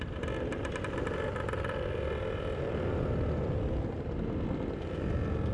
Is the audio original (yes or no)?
yes